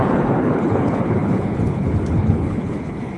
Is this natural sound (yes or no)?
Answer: no